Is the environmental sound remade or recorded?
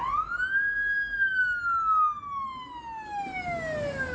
recorded